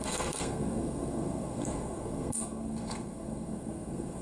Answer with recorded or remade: remade